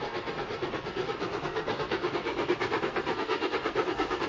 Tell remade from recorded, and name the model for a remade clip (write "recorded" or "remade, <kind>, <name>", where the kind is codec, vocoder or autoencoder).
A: remade, codec, SNAC